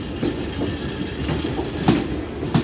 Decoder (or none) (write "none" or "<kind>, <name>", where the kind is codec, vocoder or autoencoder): none